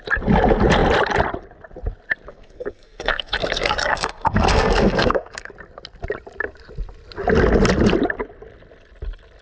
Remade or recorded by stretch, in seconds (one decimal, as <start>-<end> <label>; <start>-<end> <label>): 0.0-2.3 recorded; 2.3-5.5 remade; 5.5-9.4 recorded